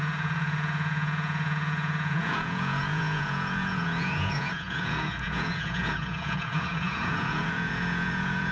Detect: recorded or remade remade